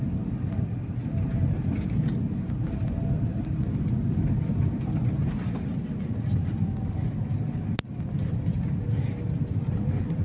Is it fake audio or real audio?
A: real